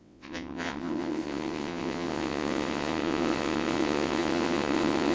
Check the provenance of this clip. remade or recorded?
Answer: remade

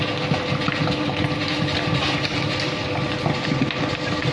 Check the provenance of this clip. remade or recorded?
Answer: recorded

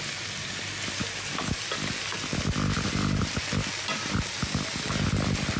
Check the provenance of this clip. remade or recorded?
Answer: recorded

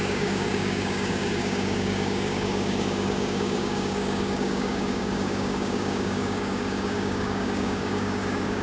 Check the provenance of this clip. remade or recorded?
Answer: remade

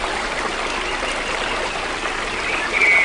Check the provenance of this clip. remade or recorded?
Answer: recorded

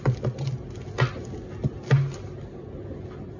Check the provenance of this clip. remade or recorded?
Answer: recorded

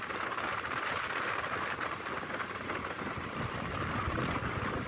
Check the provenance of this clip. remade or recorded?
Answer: recorded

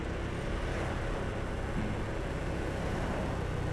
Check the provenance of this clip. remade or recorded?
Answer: recorded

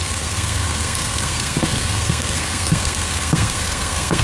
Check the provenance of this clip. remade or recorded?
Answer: remade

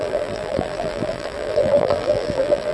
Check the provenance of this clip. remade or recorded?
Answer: remade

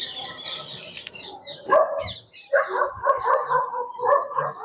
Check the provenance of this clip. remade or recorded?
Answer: remade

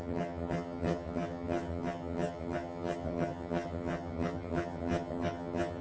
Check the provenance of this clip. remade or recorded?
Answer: remade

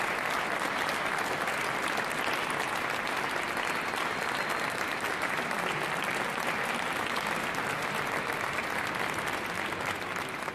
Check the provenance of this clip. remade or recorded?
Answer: recorded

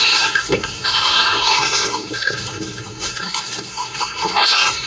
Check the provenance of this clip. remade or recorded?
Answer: remade